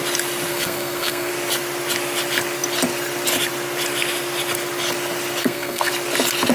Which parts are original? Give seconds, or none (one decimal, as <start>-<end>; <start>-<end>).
0.0-0.5; 1.3-5.4; 5.9-6.5